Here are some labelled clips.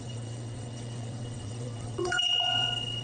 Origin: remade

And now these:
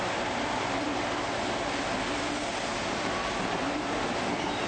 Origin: recorded